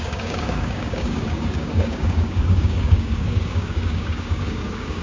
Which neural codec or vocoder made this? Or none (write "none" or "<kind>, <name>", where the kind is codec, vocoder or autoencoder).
codec, DAC